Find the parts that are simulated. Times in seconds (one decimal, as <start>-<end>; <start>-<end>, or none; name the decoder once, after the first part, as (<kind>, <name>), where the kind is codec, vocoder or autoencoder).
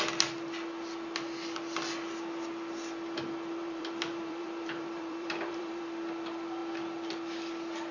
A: 3.6-5.8 (vocoder, BigVGAN v2)